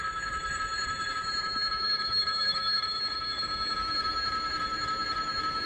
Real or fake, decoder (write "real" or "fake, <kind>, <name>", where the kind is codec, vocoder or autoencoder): fake, autoencoder, DAC-VAE